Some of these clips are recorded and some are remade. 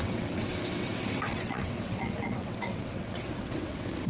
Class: remade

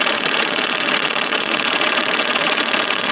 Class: remade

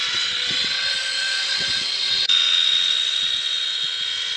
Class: remade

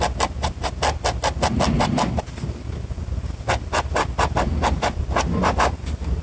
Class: recorded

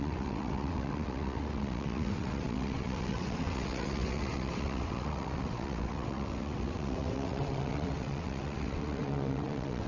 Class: remade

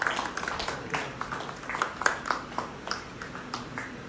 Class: recorded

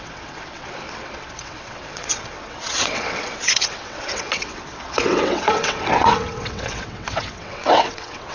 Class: remade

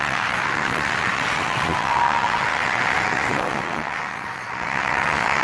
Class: remade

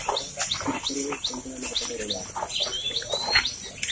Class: recorded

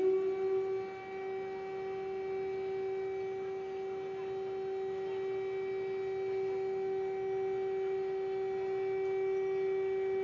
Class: recorded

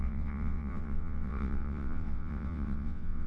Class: remade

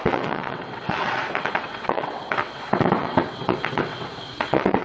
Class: remade